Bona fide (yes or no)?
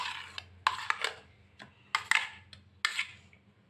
yes